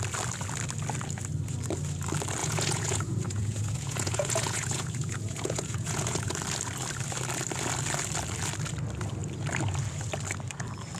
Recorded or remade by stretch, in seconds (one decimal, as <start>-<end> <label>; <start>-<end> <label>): 0.0-2.4 recorded; 2.4-6.3 remade; 6.3-11.0 recorded